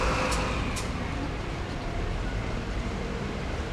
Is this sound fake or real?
real